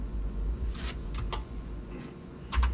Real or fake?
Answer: fake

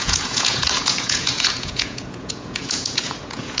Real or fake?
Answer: fake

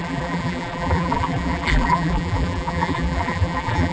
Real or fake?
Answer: fake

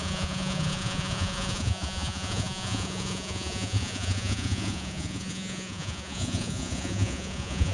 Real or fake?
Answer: fake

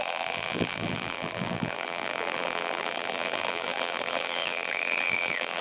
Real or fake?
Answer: fake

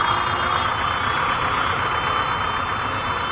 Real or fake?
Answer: real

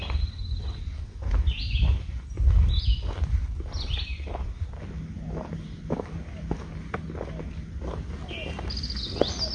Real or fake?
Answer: real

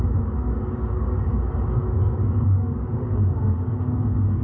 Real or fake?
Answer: fake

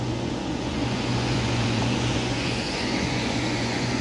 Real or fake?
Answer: fake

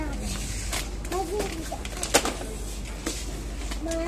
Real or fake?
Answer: real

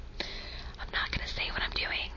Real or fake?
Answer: real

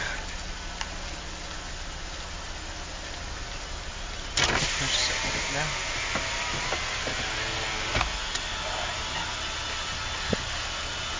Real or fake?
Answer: real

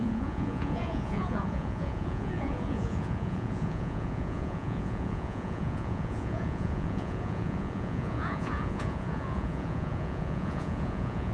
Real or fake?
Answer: fake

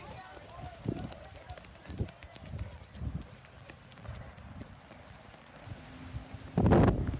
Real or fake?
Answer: real